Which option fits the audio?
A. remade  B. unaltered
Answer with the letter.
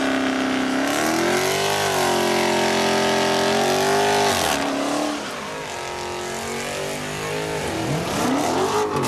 B